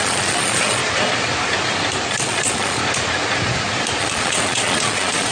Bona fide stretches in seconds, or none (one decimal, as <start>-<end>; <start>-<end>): 0.8-2.1; 2.8-4.0

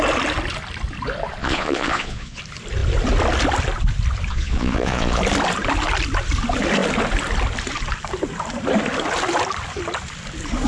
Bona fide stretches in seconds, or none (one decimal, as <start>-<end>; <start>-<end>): 0.0-1.4; 2.4-4.3; 5.2-10.7

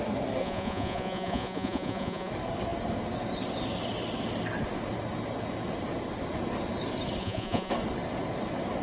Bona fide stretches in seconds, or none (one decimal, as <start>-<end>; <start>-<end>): 0.0-0.4; 2.3-7.2; 7.7-8.8

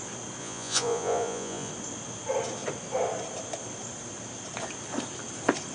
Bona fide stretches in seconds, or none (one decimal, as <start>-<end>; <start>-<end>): 0.0-0.4; 1.7-5.7

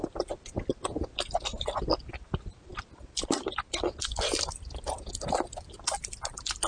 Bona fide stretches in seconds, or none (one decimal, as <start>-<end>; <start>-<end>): 0.0-6.7

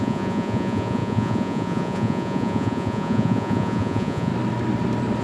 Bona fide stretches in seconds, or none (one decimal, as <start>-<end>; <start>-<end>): 4.3-5.2

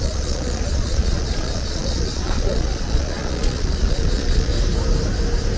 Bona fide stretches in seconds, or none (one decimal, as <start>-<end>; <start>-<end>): 4.5-5.6

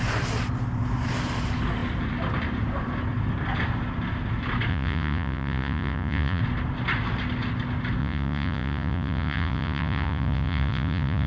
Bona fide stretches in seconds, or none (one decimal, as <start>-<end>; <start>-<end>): 0.0-4.7; 6.4-8.0